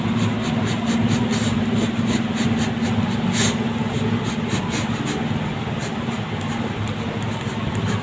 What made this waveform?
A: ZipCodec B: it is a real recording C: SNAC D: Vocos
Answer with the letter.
B